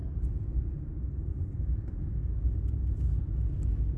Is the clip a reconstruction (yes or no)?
no